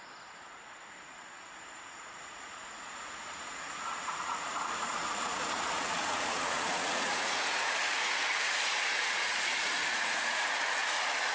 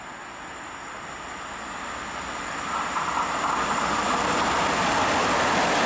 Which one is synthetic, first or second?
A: first